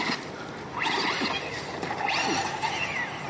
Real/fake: real